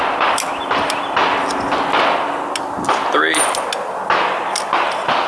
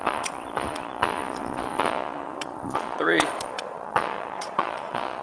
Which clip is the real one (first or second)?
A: first